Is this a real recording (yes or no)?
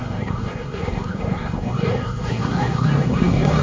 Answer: no